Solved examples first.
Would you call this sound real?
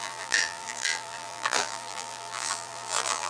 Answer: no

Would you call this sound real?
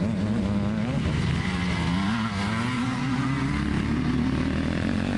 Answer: yes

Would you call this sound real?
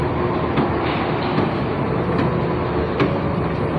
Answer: yes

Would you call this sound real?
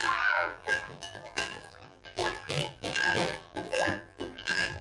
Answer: no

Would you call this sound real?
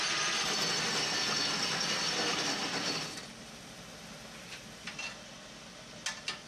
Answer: yes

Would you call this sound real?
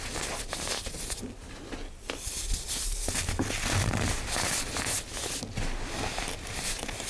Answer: yes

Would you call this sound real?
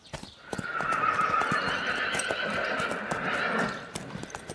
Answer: no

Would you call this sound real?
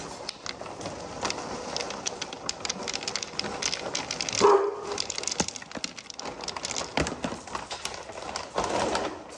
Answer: yes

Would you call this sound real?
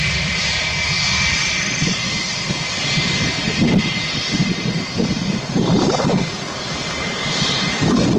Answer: no